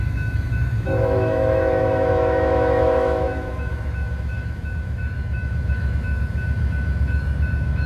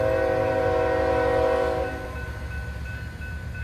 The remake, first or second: first